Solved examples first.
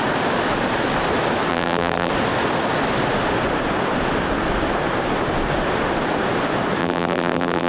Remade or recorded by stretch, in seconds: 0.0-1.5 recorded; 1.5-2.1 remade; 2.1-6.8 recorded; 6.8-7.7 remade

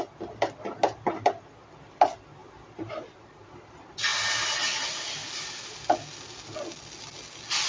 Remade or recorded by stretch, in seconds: 0.0-2.4 recorded; 2.4-3.5 remade; 3.5-7.7 recorded

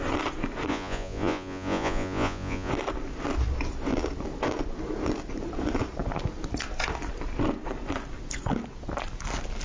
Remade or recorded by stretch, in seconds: 0.0-0.7 recorded; 0.7-2.7 remade; 2.7-9.6 recorded

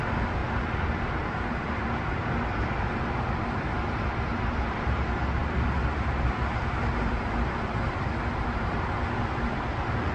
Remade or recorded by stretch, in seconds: 0.0-5.4 recorded; 5.4-7.6 remade; 7.6-10.1 recorded

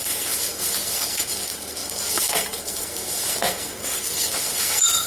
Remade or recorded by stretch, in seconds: 0.0-5.1 remade

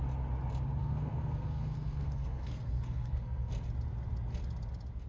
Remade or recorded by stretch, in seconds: 0.0-0.8 recorded; 0.8-3.5 remade; 3.5-5.1 recorded

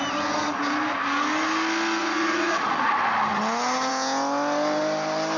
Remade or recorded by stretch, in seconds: 0.0-2.0 recorded; 2.0-2.9 remade; 2.9-5.4 recorded

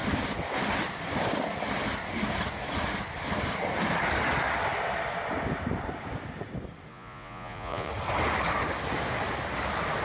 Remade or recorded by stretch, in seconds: 0.0-6.9 recorded; 6.9-7.9 remade; 7.9-10.0 recorded